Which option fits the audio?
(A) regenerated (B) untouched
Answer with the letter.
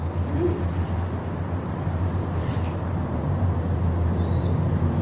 B